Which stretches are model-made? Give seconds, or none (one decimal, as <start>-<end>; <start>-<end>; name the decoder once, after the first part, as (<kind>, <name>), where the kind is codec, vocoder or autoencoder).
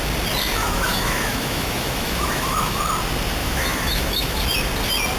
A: 0.6-2.8 (autoencoder, DAC-VAE); 3.4-4.4